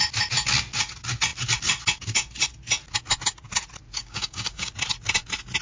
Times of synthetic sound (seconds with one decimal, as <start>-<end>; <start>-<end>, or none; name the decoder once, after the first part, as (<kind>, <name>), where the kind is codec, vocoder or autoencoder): 4.0-4.7 (codec, DAC)